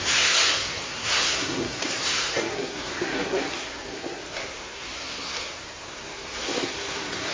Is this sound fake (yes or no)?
yes